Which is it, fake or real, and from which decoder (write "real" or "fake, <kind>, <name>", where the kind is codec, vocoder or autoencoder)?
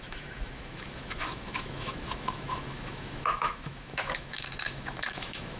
fake, autoencoder, DAC-VAE